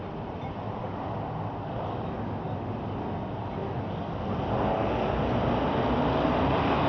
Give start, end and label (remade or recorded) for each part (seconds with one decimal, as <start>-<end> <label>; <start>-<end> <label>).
0.0-6.9 recorded